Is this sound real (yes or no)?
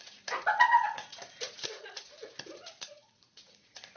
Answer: no